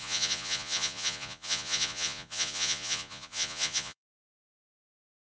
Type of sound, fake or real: fake